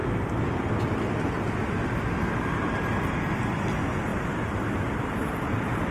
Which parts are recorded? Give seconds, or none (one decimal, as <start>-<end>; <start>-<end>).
0.0-4.1; 5.3-5.9